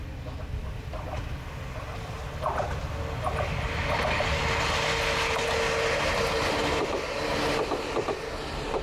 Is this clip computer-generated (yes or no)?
no